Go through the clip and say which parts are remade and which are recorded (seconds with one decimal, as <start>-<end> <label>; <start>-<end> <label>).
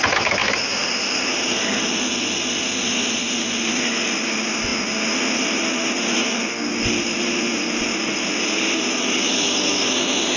0.0-10.4 recorded